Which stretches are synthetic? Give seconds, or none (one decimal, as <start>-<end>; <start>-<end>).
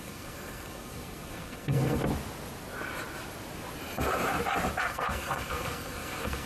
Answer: 0.0-2.0; 4.8-6.5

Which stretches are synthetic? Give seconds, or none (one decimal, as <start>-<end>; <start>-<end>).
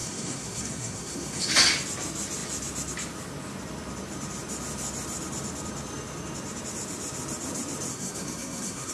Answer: 0.0-1.5; 7.9-8.9